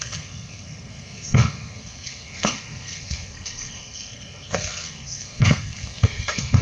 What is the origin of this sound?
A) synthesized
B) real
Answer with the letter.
A